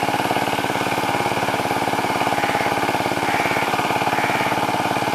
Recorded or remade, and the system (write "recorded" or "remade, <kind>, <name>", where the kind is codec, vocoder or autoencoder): remade, vocoder, BigVGAN v2